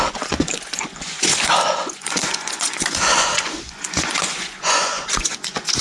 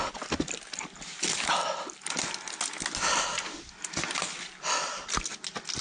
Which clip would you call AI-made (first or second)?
first